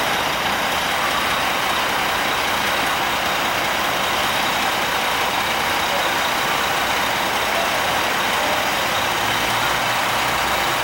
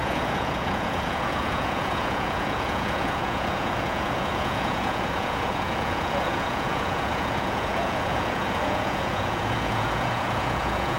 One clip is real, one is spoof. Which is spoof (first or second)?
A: second